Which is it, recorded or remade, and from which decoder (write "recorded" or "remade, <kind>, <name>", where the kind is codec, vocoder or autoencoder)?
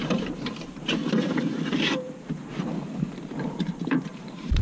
remade, vocoder, BigVGAN v2